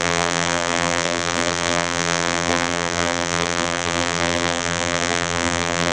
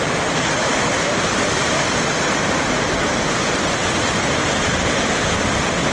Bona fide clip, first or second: second